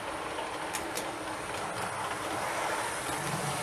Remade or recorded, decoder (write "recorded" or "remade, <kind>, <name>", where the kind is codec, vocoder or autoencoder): recorded